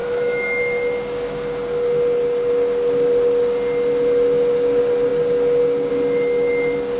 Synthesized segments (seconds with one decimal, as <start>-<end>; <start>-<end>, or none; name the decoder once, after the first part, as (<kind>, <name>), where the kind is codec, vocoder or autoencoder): 0.0-0.6 (autoencoder, DAC-VAE)